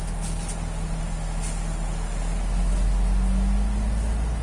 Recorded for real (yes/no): yes